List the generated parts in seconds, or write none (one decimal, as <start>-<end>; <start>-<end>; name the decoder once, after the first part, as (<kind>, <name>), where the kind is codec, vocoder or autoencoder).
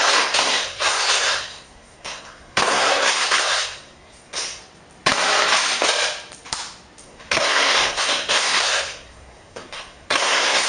0.0-4.6 (codec, SNAC); 7.0-10.7